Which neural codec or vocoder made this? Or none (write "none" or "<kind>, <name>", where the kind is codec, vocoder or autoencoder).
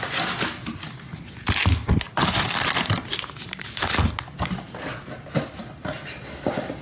none